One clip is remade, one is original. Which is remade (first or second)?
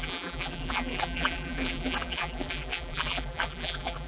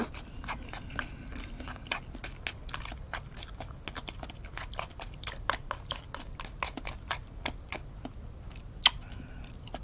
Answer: first